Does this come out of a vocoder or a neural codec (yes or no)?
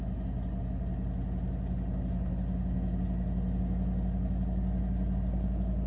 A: no